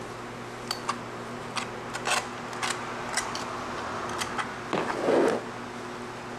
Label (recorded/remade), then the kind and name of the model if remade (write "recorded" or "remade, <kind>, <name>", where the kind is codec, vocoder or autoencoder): recorded